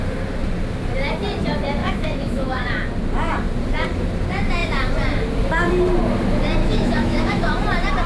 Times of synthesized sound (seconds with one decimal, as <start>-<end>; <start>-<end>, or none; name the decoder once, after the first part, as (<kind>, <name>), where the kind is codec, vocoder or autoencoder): 1.8-2.7 (autoencoder, DAC-VAE); 6.6-7.5